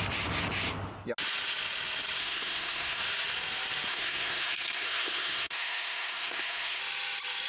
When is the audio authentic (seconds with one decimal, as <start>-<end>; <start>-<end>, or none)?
0.0-2.2; 3.0-3.9; 6.8-7.5